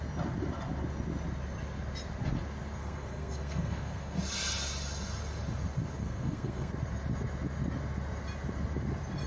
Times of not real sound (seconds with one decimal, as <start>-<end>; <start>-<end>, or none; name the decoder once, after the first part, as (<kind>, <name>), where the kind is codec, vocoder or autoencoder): 2.8-4.2 (codec, SNAC); 6.0-6.7